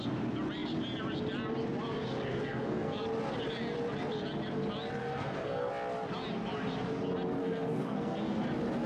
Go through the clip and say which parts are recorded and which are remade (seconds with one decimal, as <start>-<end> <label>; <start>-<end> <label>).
0.0-2.3 recorded; 2.3-3.0 remade; 3.0-5.0 recorded; 5.0-5.7 remade; 5.7-7.4 recorded; 7.4-8.4 remade; 8.4-8.9 recorded

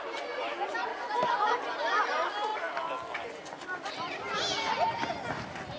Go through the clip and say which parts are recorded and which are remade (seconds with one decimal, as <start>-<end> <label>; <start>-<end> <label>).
0.0-5.8 recorded

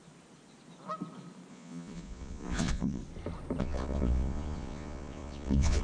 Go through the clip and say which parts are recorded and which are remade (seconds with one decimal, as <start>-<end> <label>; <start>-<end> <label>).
0.0-1.5 recorded; 1.5-3.0 remade; 3.0-3.6 recorded; 3.6-5.8 remade

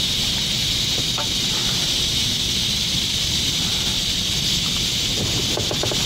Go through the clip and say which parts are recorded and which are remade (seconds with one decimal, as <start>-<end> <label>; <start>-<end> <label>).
0.0-1.6 recorded; 1.6-2.3 remade; 2.3-6.1 recorded

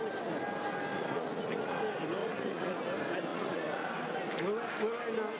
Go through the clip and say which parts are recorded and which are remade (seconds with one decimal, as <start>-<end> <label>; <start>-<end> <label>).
0.0-0.9 recorded; 0.9-1.8 remade; 1.8-2.2 recorded; 2.2-2.8 remade; 2.8-3.3 recorded; 3.3-3.9 remade; 3.9-5.4 recorded

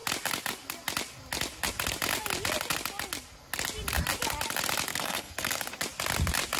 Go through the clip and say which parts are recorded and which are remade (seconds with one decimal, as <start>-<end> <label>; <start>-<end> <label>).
0.0-4.9 recorded; 4.9-5.6 remade; 5.6-6.6 recorded

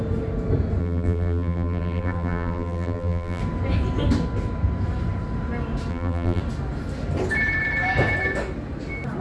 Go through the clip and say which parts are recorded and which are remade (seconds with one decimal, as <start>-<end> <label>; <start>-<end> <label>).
0.0-0.8 recorded; 0.8-3.4 remade; 3.4-5.9 recorded; 5.9-6.4 remade; 6.4-9.2 recorded